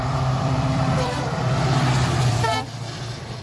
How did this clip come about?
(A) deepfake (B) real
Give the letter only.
A